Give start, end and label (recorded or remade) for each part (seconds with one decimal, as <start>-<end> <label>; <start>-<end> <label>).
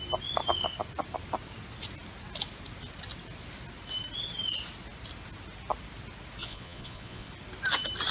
0.0-6.4 recorded; 6.4-7.3 remade; 7.3-8.1 recorded